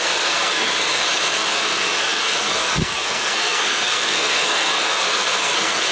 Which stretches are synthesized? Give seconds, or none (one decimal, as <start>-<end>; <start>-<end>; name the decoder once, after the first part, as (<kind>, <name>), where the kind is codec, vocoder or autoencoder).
0.0-5.9 (codec, SNAC)